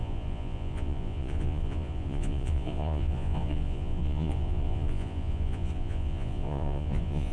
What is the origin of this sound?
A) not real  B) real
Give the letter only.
A